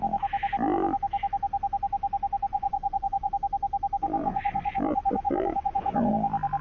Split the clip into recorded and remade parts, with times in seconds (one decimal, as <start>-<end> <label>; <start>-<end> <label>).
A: 0.0-2.5 recorded; 2.5-3.3 remade; 3.3-4.2 recorded; 4.2-6.1 remade; 6.1-6.6 recorded